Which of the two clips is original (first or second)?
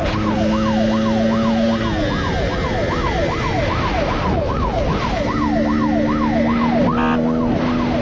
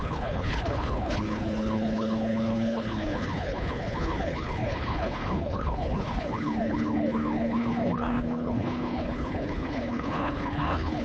first